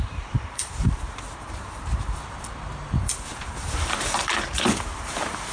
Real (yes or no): no